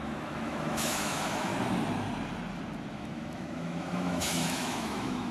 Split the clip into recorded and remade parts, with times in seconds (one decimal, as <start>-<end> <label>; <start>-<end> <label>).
0.0-1.5 remade; 1.5-2.9 recorded; 2.9-5.3 remade